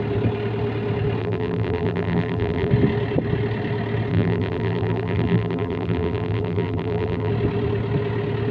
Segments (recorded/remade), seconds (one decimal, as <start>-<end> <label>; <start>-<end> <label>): 0.0-1.2 recorded; 1.2-2.7 remade; 2.7-4.1 recorded; 4.1-7.3 remade; 7.3-8.5 recorded